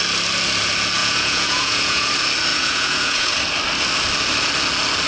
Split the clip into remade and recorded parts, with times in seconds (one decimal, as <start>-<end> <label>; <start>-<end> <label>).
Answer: 0.0-1.0 recorded; 1.0-2.1 remade; 2.1-2.5 recorded; 2.5-3.3 remade; 3.3-5.1 recorded